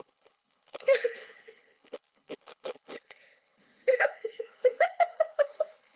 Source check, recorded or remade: remade